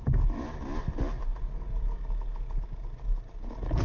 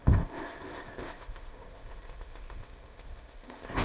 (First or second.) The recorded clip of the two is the first